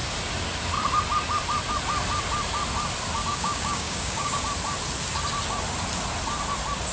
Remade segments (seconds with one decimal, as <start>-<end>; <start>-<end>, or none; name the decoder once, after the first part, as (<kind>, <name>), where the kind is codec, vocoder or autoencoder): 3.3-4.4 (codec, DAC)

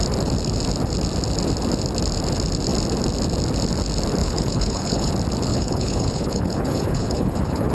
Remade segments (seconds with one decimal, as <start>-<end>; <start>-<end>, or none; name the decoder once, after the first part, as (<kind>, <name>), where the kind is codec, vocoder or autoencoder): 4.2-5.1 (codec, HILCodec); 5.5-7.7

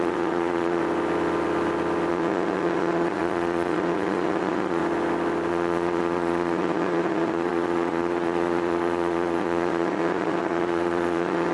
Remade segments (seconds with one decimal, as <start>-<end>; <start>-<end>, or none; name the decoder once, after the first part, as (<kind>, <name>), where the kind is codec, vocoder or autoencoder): 0.0-0.8 (vocoder, Vocos); 2.1-4.8; 5.5-11.5

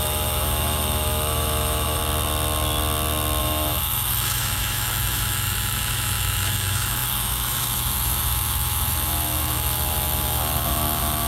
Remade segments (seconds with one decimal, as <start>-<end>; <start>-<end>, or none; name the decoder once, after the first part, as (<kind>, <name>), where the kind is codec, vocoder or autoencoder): 0.0-2.0 (autoencoder, DAC-VAE); 3.4-11.3

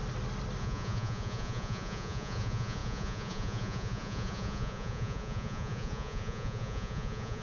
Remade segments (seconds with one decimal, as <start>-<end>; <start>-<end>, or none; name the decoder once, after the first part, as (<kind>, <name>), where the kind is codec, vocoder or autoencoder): 0.6-7.4 (vocoder, Vocos)